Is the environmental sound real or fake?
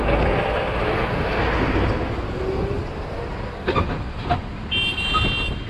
real